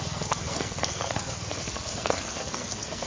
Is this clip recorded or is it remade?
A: remade